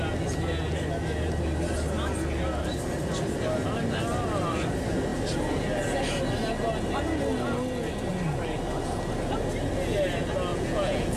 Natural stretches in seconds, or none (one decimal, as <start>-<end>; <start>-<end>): 0.0-10.5

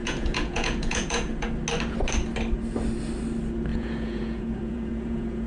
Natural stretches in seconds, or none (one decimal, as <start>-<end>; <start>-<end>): 1.5-3.7

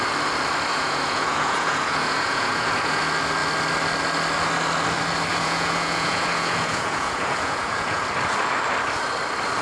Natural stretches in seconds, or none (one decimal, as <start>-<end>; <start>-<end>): 0.0-0.7; 3.0-5.3; 8.0-9.6

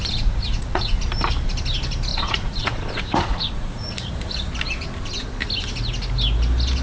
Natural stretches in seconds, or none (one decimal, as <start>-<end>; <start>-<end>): 1.0-2.1; 4.1-6.8

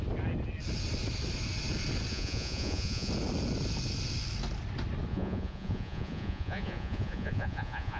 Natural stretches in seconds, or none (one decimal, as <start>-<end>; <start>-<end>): 0.0-2.1; 3.1-5.1

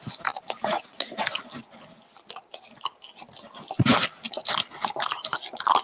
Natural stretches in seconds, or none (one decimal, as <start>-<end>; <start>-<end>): 0.0-0.7; 1.4-5.8

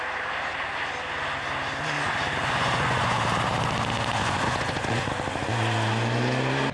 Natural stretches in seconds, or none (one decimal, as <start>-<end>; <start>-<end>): 0.0-2.4; 3.2-4.2; 5.1-6.7

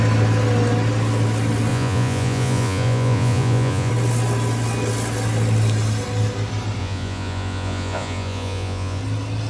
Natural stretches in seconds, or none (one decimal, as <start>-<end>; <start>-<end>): 0.0-1.7; 3.9-6.8; 9.0-9.5